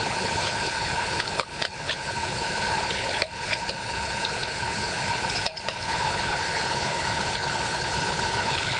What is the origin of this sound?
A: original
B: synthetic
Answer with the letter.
B